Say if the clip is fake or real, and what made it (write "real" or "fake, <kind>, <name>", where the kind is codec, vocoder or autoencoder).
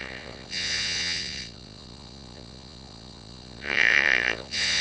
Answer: fake, vocoder, Vocos